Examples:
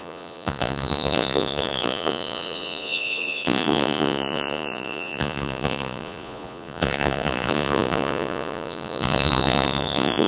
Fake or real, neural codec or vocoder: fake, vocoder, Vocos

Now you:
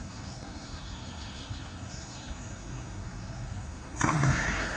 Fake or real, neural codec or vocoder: fake, codec, SNAC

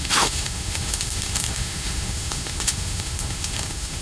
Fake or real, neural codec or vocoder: fake, autoencoder, DAC-VAE